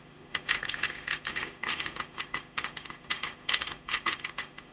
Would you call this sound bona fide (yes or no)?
no